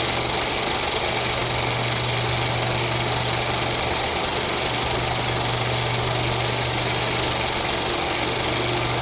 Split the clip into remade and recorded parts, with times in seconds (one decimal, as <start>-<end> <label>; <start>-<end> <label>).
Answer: 0.0-9.0 recorded